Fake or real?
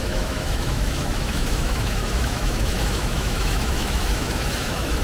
fake